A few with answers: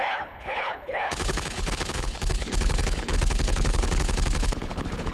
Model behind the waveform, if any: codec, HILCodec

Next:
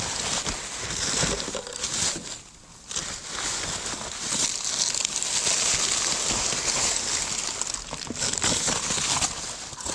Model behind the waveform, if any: none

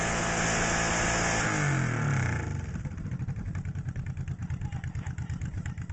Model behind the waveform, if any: none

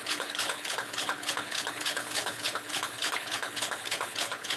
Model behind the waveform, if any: codec, HILCodec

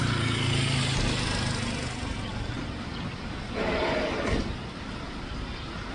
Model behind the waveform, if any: none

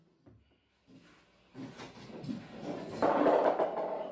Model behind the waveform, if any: none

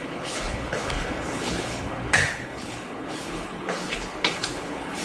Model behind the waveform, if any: codec, HILCodec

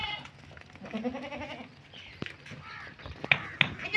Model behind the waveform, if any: none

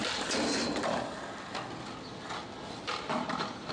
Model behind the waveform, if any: none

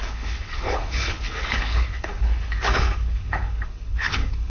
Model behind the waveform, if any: codec, HILCodec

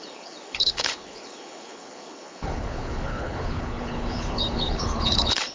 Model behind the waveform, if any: codec, HILCodec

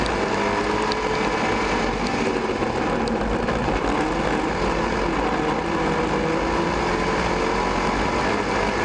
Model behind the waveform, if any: none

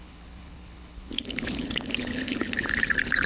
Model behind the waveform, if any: codec, HILCodec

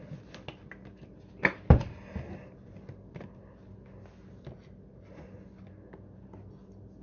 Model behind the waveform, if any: none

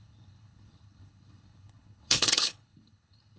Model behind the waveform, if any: codec, HILCodec